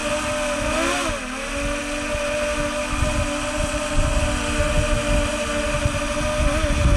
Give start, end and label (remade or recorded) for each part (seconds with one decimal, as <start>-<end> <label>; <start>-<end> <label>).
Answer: 0.0-7.0 recorded